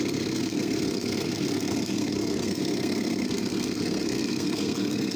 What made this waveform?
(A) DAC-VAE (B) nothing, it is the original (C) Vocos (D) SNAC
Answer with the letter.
D